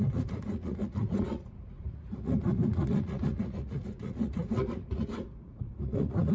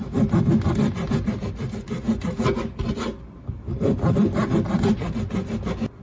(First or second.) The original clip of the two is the second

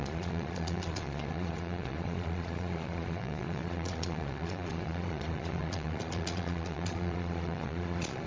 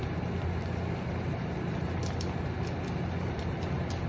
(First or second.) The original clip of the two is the second